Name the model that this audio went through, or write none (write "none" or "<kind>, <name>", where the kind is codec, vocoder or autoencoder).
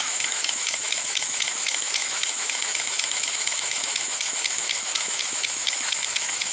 autoencoder, DAC-VAE